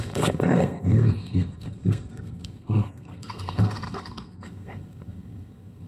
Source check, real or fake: fake